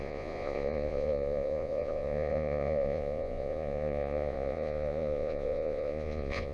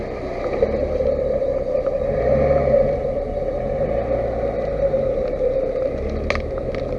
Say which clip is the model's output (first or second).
first